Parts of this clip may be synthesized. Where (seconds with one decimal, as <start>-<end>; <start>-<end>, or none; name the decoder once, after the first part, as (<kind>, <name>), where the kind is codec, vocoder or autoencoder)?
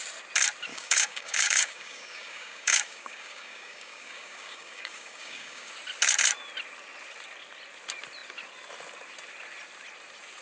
0.7-5.7 (codec, DAC)